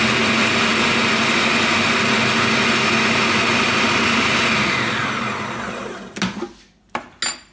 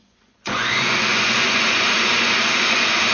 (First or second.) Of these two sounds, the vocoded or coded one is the second